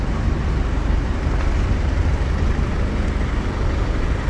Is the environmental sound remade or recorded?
recorded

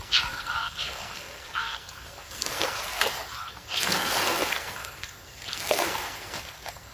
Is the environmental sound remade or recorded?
remade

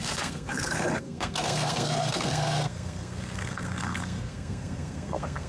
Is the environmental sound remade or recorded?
remade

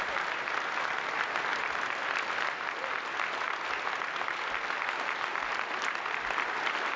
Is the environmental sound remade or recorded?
recorded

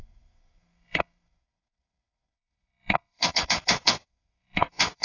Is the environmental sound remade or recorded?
remade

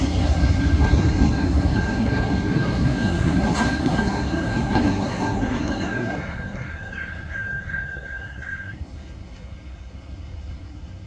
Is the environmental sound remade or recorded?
remade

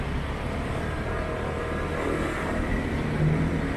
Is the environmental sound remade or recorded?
recorded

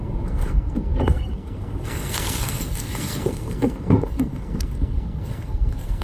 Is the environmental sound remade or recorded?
remade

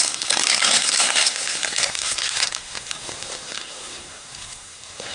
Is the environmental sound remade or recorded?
remade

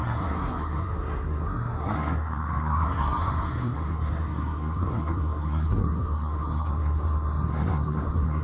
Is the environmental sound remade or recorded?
remade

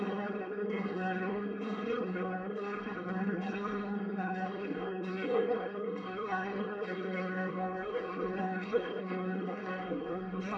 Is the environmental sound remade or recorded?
remade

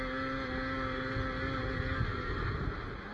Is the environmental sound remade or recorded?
recorded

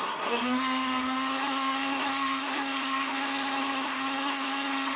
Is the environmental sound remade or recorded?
remade